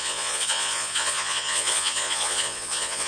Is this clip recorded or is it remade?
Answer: remade